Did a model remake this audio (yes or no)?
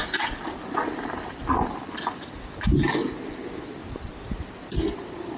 no